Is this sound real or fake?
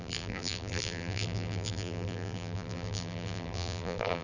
fake